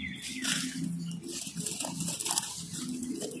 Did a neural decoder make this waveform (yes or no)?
no